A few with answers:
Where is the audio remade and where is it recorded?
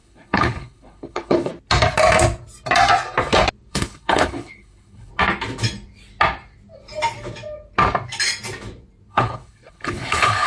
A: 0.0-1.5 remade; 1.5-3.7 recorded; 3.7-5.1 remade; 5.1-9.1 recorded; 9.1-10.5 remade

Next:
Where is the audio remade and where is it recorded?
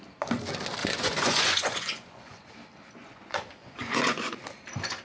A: 0.0-0.8 recorded; 0.8-2.5 remade; 2.5-3.0 recorded; 3.0-4.4 remade; 4.4-5.0 recorded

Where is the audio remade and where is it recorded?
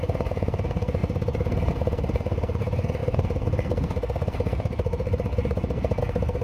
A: 0.0-6.4 remade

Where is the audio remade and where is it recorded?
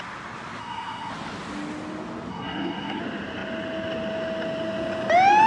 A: 0.0-0.6 recorded; 0.6-1.1 remade; 1.1-2.3 recorded; 2.3-3.0 remade; 3.0-5.5 recorded